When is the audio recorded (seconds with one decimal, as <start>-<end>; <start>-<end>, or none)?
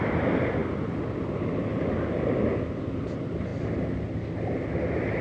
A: 0.0-5.2